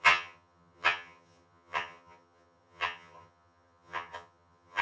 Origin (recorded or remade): remade